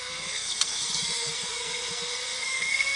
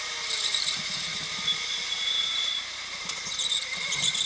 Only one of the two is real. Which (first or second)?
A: second